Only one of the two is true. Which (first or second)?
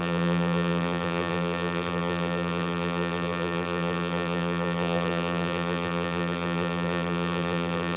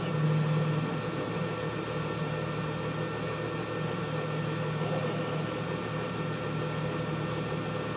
second